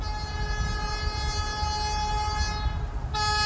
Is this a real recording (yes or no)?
yes